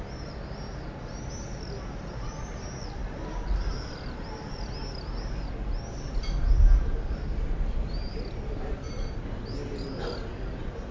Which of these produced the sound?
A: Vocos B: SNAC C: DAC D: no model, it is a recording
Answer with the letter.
D